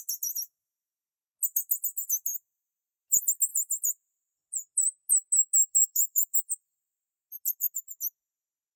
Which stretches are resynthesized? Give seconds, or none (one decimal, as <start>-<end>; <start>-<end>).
none